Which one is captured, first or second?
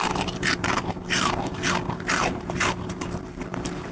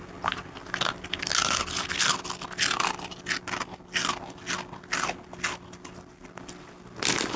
second